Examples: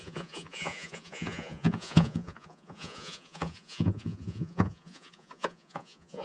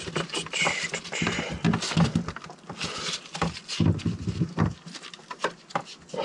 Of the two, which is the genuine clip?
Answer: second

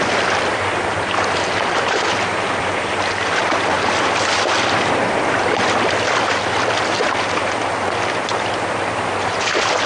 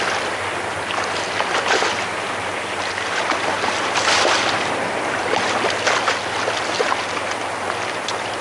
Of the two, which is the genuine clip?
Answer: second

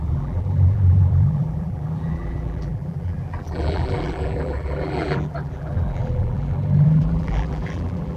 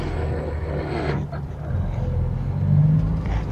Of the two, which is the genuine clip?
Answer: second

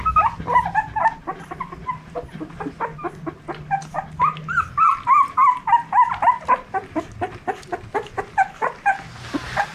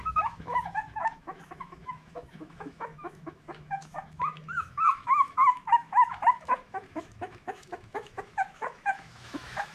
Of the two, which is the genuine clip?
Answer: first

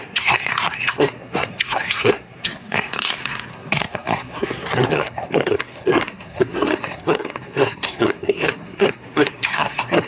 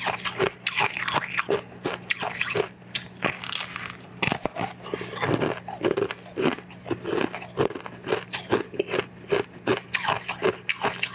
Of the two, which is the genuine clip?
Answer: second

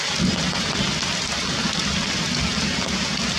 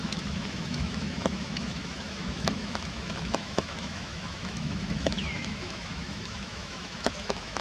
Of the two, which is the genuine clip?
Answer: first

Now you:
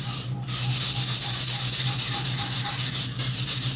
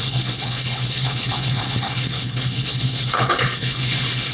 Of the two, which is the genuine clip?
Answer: first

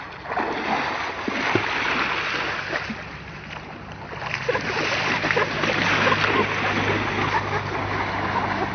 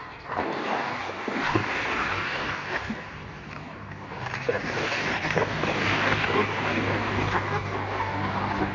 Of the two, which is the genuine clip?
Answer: first